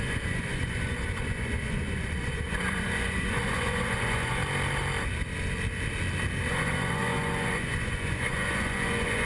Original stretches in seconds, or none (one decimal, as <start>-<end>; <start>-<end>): 4.4-6.5